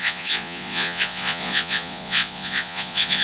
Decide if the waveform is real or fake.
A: fake